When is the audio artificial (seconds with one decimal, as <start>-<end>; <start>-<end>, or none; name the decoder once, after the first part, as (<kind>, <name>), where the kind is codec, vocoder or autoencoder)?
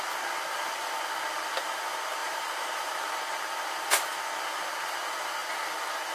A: 2.2-2.9 (vocoder, BigVGAN v2)